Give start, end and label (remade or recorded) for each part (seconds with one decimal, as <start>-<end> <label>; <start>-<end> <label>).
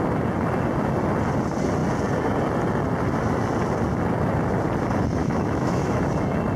0.0-5.2 recorded; 5.2-6.0 remade; 6.0-6.6 recorded